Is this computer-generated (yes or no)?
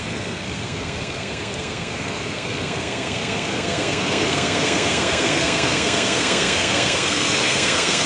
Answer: yes